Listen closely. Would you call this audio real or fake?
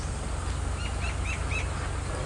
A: real